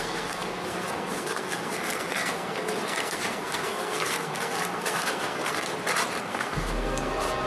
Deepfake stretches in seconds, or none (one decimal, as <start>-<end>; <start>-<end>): 0.0-5.7; 6.2-7.5